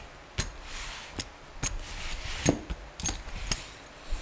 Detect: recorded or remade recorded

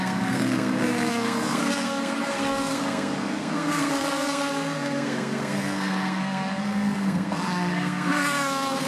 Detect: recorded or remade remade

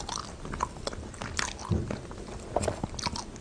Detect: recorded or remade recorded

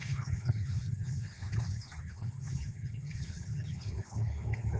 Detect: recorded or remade remade